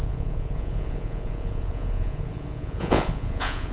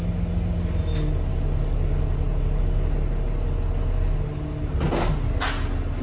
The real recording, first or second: second